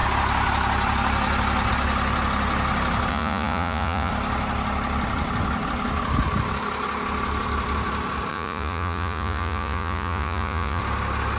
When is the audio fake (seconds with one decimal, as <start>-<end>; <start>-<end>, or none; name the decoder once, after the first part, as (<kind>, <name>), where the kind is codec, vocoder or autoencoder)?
3.1-4.1 (vocoder, Vocos); 8.3-10.8